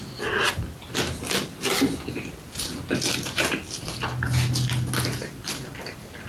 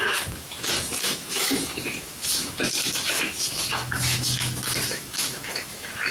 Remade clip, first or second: second